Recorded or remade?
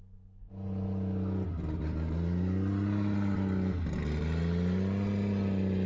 recorded